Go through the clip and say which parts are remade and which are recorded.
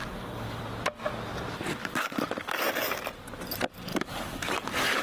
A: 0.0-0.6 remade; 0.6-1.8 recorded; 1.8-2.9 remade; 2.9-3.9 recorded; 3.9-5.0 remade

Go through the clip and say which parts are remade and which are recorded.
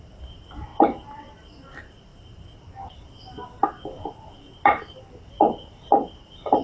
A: 0.0-0.7 recorded; 0.7-1.3 remade; 1.3-2.1 recorded; 2.1-5.0 remade; 5.0-6.6 recorded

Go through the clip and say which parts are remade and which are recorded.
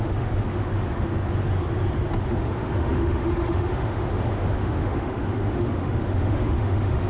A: 0.0-0.6 remade; 0.6-2.2 recorded; 2.2-7.1 remade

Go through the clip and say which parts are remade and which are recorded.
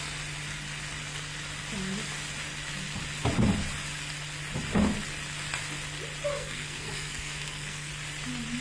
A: 0.0-6.3 recorded; 6.3-7.9 remade; 7.9-8.6 recorded